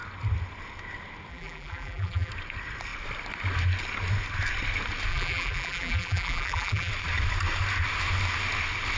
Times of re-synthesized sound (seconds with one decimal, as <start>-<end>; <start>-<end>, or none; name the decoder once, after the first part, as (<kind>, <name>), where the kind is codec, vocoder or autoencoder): 1.3-2.3 (vocoder, BigVGAN v2); 5.1-6.9